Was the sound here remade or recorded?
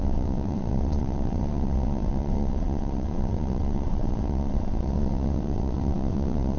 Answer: remade